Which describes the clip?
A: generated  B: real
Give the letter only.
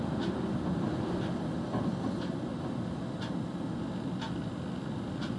B